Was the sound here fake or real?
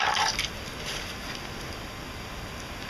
real